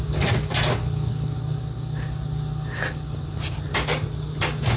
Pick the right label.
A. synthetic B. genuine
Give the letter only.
B